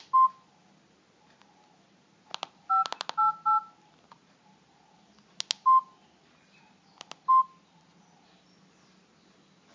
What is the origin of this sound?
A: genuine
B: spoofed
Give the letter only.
A